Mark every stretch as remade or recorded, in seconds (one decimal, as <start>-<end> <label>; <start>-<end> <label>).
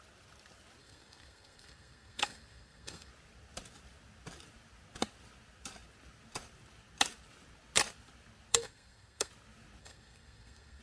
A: 0.0-0.8 recorded; 0.8-3.1 remade; 3.1-8.5 recorded; 8.5-9.3 remade; 9.3-9.8 recorded; 9.8-10.8 remade